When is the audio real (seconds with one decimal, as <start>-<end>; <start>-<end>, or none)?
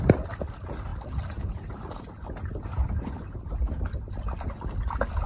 0.0-5.3